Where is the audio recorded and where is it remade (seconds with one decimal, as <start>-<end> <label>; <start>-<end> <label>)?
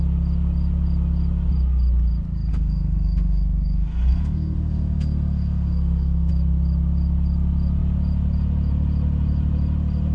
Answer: 0.0-2.5 recorded; 2.5-6.3 remade; 6.3-10.1 recorded